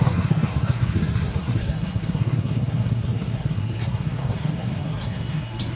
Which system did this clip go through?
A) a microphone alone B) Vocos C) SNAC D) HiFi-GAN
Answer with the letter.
C